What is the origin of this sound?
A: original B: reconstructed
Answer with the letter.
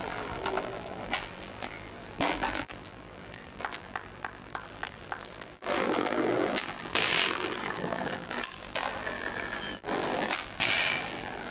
B